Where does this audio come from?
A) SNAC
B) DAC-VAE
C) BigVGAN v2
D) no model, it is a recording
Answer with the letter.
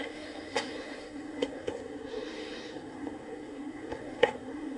A